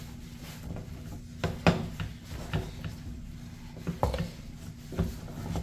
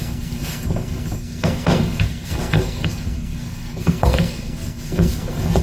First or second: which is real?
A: first